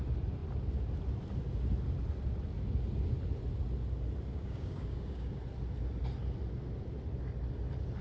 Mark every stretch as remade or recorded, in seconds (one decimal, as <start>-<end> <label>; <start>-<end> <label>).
0.0-4.3 recorded; 4.3-5.4 remade; 5.4-8.0 recorded